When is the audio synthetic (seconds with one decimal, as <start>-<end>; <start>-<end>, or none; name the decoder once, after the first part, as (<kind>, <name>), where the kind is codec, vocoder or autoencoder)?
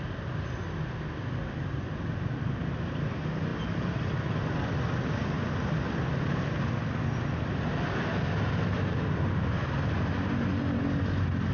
none